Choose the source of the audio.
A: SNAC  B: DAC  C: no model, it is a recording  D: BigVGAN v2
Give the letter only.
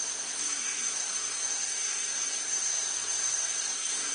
A